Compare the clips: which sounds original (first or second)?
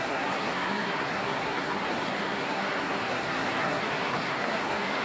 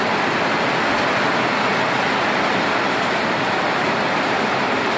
second